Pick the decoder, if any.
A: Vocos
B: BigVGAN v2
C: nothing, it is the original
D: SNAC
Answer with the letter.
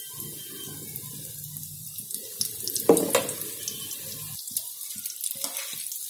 C